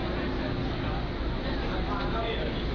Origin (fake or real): real